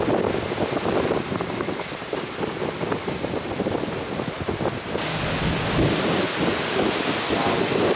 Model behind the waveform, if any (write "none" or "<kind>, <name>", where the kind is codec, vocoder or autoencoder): vocoder, BigVGAN v2